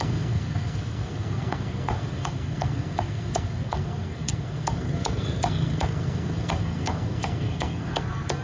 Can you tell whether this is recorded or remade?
remade